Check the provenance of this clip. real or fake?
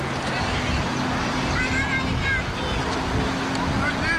real